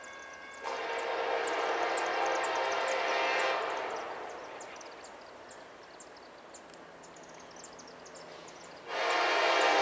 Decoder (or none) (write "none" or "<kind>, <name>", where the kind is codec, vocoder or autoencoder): none